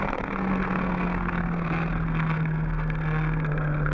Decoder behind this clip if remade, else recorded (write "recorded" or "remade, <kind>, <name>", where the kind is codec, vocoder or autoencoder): remade, codec, SNAC